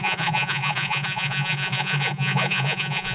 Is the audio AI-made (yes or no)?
yes